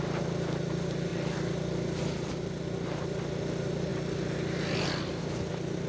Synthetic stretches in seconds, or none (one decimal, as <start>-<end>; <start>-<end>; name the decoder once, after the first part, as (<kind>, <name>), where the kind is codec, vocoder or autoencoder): none